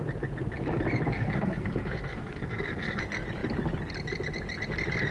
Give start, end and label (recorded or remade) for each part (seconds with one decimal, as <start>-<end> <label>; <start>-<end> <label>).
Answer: 0.0-1.1 recorded; 1.1-3.0 remade; 3.0-5.1 recorded